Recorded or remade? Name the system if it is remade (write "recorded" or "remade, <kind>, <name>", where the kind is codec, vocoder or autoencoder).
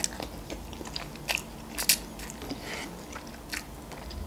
recorded